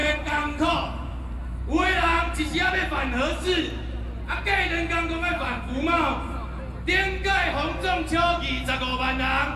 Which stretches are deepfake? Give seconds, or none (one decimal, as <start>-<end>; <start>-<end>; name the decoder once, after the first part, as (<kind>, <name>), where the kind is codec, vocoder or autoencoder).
0.0-3.6 (vocoder, BigVGAN v2)